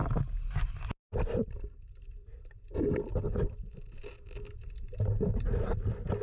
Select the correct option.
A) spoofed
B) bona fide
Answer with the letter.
B